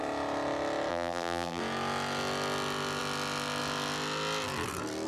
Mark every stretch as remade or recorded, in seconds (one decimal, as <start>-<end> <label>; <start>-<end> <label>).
0.0-0.9 recorded; 0.9-1.6 remade; 1.6-5.1 recorded